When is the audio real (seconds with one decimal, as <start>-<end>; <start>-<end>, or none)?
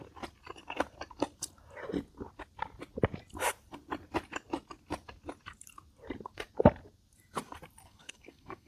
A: 0.0-7.8